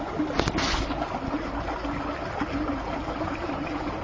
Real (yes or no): yes